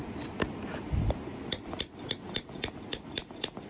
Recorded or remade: recorded